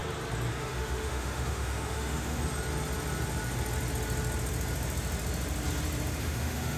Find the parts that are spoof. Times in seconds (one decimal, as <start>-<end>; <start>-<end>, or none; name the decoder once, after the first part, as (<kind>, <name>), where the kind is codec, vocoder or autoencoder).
0.5-2.4 (autoencoder, DAC-VAE); 6.2-6.8

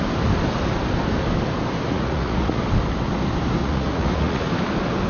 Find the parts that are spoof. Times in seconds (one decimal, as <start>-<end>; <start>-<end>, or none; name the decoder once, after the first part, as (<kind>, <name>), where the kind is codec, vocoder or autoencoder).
1.9-2.6 (vocoder, Vocos); 3.6-4.5

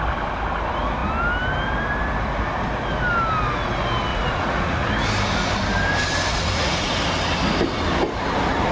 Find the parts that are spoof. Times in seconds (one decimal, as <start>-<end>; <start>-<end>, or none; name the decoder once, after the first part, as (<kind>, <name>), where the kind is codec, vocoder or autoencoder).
4.1-4.9 (vocoder, Vocos); 6.3-6.9

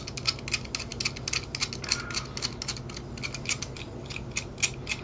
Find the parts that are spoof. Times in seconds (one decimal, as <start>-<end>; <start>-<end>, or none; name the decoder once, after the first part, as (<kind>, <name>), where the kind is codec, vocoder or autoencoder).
none

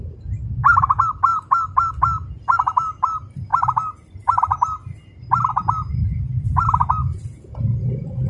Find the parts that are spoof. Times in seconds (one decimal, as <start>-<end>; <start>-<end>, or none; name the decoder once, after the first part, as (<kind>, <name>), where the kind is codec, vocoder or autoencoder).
none

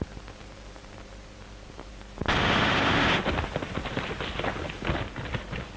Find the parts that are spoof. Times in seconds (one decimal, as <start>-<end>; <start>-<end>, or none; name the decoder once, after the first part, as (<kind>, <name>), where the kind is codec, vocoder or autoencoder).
none

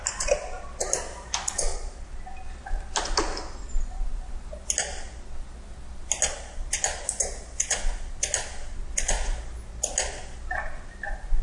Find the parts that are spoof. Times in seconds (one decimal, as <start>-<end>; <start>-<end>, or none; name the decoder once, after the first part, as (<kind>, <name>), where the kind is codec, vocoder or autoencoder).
none

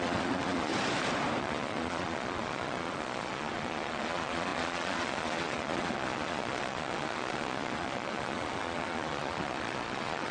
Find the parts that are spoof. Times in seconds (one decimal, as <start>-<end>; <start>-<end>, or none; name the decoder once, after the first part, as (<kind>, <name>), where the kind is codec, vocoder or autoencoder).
0.0-0.7 (vocoder, Vocos); 1.4-10.3